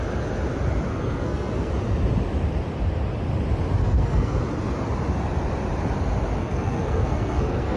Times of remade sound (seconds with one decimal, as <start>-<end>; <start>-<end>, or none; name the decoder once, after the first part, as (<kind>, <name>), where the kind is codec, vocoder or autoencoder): 0.9-1.7 (codec, SNAC); 3.8-4.4; 6.4-7.8